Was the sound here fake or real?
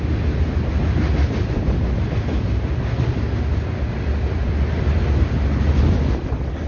real